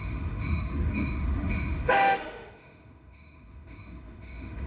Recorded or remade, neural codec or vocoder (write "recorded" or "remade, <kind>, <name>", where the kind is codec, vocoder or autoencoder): remade, autoencoder, DAC-VAE